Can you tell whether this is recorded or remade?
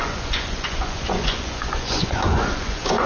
remade